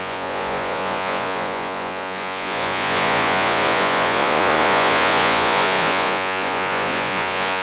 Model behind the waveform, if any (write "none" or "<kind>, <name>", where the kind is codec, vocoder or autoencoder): vocoder, Vocos